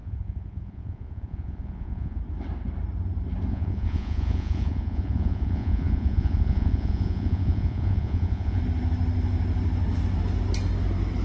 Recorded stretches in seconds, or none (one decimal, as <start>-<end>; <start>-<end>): 2.2-3.5; 8.6-11.2